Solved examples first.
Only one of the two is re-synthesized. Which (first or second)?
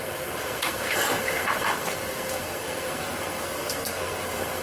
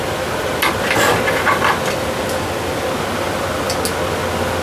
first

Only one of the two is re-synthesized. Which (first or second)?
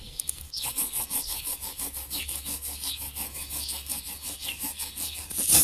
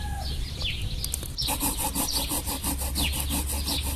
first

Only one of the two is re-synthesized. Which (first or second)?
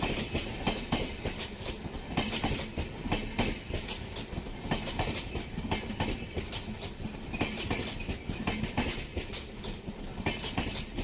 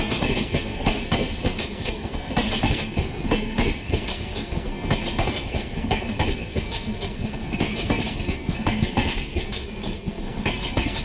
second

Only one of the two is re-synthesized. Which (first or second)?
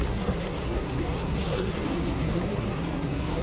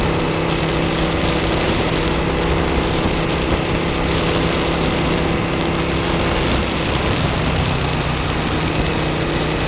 first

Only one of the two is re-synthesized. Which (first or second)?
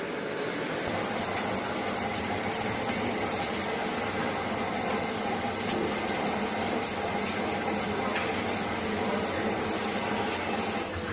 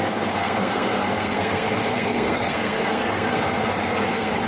second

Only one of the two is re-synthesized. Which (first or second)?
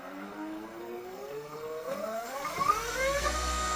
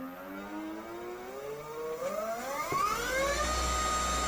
first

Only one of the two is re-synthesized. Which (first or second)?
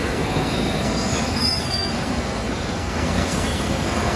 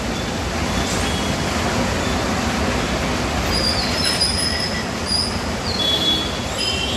first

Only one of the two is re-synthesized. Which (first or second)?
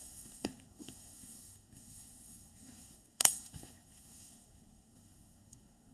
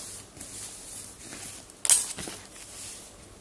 first